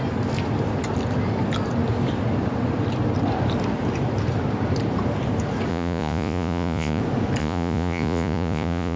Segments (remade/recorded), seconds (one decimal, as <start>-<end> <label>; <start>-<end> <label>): 0.0-5.7 recorded; 5.7-7.0 remade; 7.0-7.4 recorded; 7.4-9.0 remade